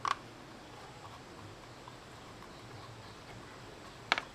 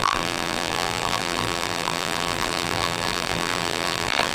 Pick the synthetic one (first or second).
second